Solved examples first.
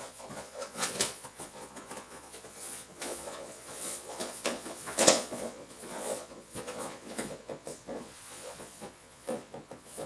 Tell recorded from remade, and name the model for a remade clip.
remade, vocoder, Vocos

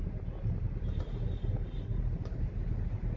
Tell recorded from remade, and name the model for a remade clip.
recorded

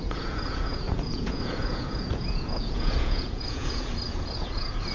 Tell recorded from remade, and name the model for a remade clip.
remade, vocoder, Vocos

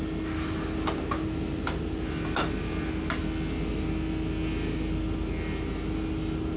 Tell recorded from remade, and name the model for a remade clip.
recorded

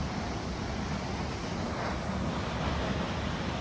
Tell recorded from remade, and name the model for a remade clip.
recorded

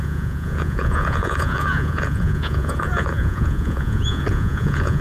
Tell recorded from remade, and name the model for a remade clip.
remade, vocoder, Vocos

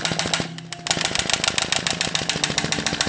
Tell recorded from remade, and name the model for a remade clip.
recorded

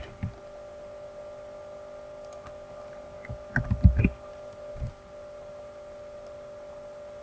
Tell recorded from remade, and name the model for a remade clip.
recorded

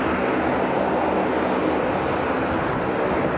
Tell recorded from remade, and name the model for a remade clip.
recorded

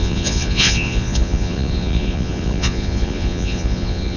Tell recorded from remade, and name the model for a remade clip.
remade, vocoder, Vocos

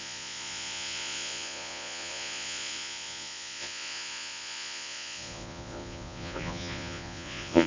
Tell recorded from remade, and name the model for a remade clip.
remade, vocoder, Vocos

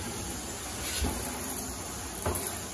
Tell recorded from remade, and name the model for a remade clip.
recorded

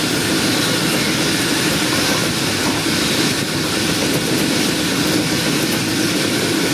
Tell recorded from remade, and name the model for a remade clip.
recorded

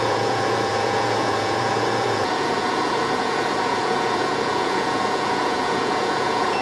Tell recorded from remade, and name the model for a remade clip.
remade, vocoder, Vocos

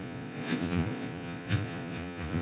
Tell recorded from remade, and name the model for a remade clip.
remade, vocoder, Vocos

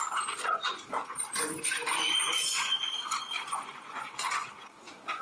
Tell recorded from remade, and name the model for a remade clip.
remade, vocoder, Vocos